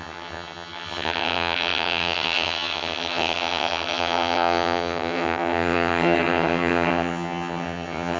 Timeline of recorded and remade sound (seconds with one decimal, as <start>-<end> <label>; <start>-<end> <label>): 0.0-8.2 remade